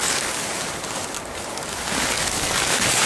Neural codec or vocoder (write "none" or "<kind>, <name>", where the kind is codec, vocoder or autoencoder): codec, DAC